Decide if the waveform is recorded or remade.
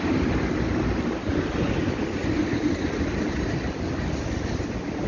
recorded